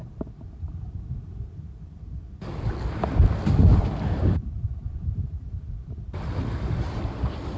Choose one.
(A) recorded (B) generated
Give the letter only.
B